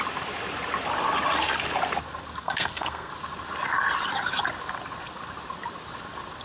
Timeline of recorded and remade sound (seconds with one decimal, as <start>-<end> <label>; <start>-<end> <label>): 0.0-2.4 recorded; 2.4-3.1 remade; 3.1-6.4 recorded